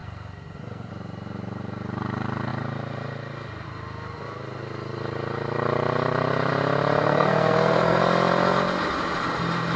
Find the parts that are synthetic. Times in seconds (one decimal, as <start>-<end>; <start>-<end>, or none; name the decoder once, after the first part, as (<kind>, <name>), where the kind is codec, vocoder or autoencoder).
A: 0.0-0.9 (codec, SNAC); 7.0-8.0